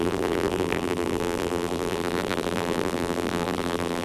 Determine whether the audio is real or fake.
fake